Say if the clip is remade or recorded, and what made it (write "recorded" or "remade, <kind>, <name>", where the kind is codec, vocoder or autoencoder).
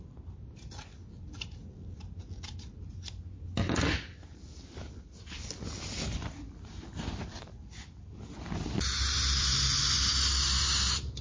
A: recorded